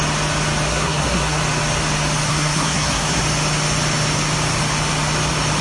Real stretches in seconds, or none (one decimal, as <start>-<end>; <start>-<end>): 0.0-0.7; 1.4-2.3; 3.2-5.6